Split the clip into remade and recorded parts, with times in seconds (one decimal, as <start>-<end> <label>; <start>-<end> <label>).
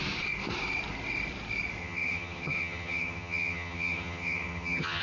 0.0-1.8 recorded; 1.8-5.0 remade